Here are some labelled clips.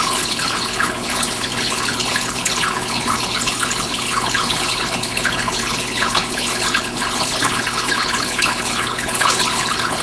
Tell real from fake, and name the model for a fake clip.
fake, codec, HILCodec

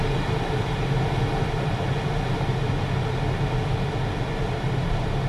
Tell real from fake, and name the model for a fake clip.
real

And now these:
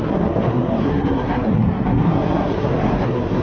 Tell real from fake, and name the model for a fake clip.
fake, codec, SNAC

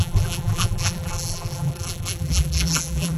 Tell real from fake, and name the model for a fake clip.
fake, vocoder, BigVGAN v2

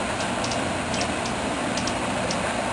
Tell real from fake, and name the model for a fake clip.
real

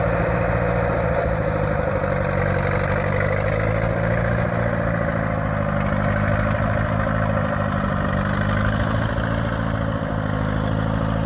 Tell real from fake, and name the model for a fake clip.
real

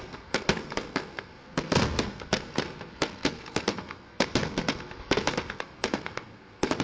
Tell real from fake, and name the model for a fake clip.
fake, codec, SNAC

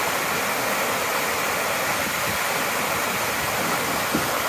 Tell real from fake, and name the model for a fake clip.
real